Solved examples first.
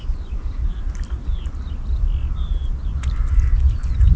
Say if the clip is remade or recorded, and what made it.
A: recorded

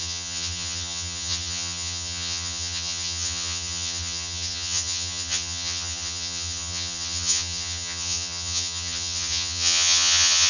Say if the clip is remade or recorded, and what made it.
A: remade, vocoder, HiFi-GAN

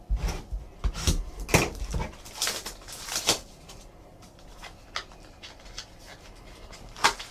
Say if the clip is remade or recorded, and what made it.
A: recorded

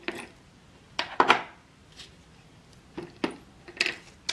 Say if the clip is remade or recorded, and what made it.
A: recorded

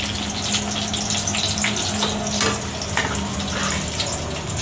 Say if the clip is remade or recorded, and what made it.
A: recorded